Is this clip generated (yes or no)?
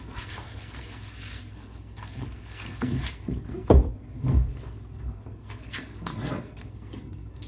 yes